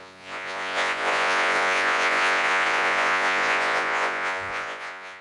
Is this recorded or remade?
remade